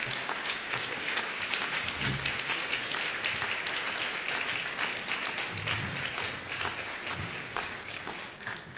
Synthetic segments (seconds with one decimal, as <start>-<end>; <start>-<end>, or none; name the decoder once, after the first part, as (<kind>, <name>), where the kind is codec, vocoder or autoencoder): 0.0-2.8 (codec, DAC); 7.2-8.8

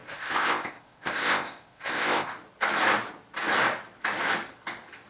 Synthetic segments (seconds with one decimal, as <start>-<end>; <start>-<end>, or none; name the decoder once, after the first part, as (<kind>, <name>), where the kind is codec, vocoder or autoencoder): 0.0-2.3 (codec, ZipCodec)

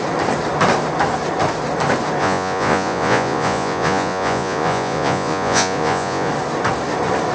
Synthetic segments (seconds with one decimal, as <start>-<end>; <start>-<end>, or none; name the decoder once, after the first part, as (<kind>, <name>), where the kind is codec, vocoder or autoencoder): 2.2-6.3 (vocoder, Vocos)